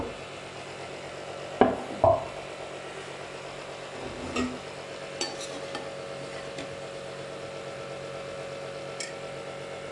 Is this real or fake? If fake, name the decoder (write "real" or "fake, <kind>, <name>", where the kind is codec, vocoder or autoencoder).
real